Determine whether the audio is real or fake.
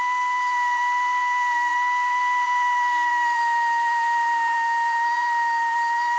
fake